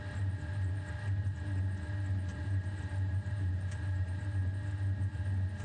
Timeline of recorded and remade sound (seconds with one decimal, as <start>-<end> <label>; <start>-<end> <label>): 0.0-2.3 recorded; 2.3-4.4 remade; 4.4-5.6 recorded